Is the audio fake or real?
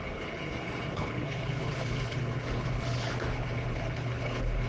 fake